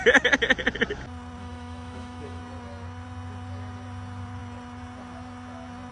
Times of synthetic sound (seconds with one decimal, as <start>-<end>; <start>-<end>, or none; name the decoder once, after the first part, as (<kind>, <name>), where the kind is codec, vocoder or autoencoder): 1.4-2.4 (autoencoder, DAC-VAE)